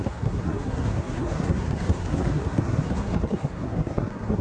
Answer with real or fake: fake